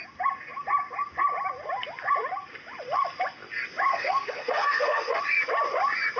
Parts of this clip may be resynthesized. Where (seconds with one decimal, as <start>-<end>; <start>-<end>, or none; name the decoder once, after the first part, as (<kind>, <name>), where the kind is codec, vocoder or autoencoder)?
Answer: 3.9-5.2 (codec, SNAC)